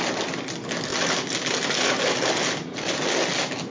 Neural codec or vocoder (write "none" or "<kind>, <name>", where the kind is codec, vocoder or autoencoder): none